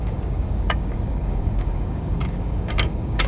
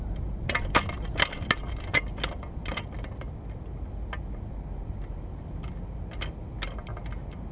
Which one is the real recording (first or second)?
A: second